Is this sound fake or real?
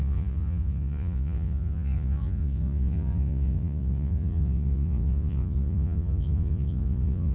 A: fake